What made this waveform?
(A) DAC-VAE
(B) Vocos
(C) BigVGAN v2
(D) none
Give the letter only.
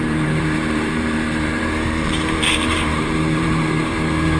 C